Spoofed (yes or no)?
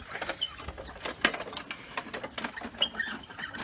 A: no